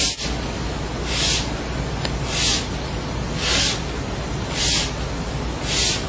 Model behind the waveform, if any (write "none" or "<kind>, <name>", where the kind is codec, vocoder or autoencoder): none